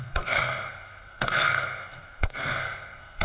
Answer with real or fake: fake